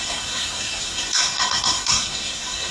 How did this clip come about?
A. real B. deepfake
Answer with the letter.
B